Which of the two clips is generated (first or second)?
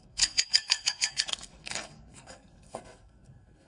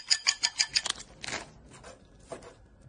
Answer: first